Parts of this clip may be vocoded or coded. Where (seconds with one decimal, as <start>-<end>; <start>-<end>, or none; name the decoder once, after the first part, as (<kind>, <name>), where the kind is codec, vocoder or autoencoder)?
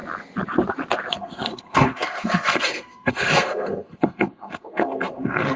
1.1-5.6 (codec, SNAC)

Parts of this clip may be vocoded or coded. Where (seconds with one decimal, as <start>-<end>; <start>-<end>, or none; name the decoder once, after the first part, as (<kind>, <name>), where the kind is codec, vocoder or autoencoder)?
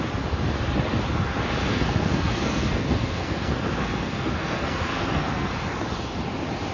1.7-5.5 (codec, SNAC)